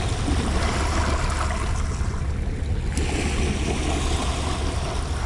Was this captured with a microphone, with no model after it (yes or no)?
yes